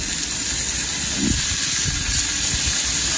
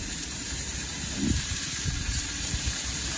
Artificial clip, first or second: second